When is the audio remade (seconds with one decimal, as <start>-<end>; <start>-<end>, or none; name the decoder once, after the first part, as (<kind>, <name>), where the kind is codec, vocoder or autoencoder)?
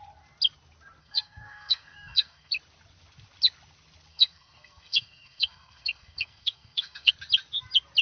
1.0-2.5 (codec, SNAC); 4.1-7.1